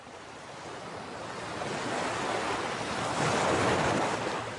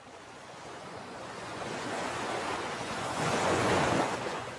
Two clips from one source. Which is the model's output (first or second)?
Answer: second